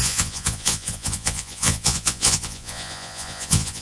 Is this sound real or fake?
fake